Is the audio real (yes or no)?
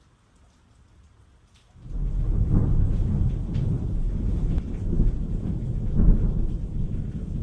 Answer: yes